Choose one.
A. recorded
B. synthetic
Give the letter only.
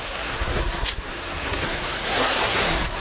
B